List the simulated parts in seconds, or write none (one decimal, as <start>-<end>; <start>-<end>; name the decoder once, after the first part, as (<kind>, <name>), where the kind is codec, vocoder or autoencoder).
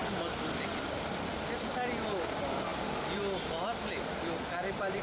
none